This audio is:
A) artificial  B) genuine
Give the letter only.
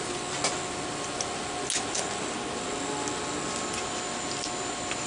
B